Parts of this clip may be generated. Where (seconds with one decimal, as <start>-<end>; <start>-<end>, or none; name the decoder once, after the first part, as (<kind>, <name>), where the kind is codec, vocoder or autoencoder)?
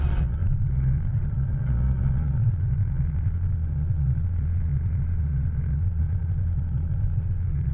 0.0-7.7 (vocoder, Vocos)